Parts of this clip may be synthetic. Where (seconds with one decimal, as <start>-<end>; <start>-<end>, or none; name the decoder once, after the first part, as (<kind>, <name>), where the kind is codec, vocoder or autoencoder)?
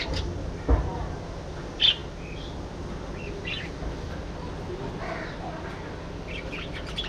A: none